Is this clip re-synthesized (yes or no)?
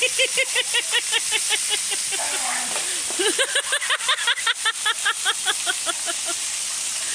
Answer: no